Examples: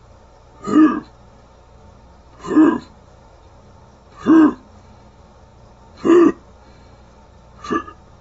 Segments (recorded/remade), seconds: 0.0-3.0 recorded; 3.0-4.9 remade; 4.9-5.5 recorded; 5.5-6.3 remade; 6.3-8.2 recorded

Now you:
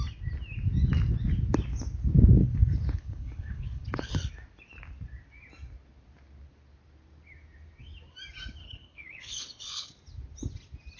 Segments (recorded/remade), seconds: 0.0-2.4 recorded; 2.4-4.3 remade; 4.3-8.6 recorded; 8.6-9.9 remade; 9.9-11.0 recorded

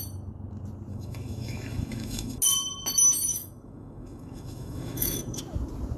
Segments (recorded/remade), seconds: 0.0-0.9 recorded; 0.9-2.4 remade; 2.4-3.3 recorded; 3.3-5.4 remade; 5.4-6.0 recorded